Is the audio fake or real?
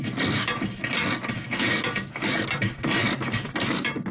real